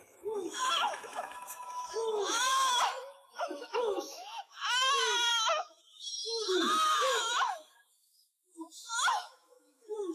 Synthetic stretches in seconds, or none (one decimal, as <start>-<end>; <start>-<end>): 0.0-10.1